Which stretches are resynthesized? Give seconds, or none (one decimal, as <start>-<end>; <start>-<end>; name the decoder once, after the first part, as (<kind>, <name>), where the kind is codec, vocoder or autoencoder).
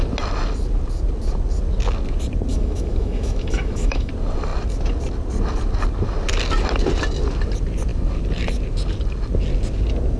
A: 2.5-4.1 (autoencoder, DAC-VAE)